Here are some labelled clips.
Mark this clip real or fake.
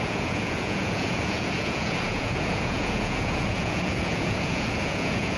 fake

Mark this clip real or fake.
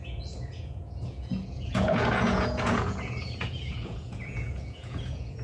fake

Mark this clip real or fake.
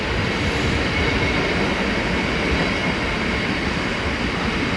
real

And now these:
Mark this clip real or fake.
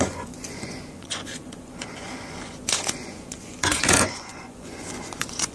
fake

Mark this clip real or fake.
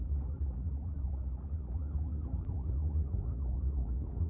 fake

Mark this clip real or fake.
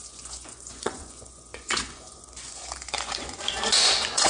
fake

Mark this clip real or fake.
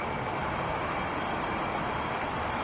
real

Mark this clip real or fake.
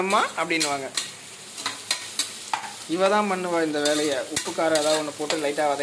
real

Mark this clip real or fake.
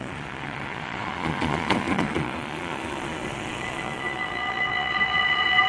fake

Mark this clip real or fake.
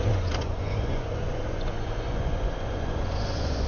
fake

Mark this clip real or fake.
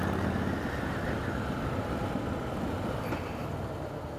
real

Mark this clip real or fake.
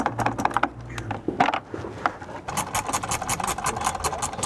real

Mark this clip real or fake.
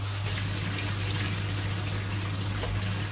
real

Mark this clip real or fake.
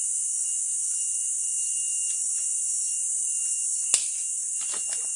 real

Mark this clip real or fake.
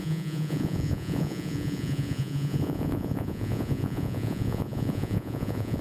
fake